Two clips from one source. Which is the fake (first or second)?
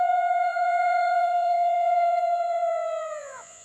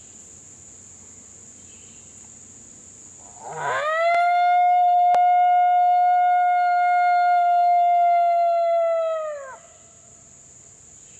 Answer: first